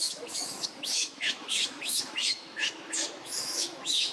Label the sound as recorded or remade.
remade